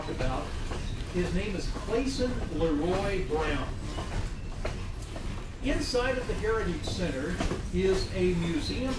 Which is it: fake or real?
real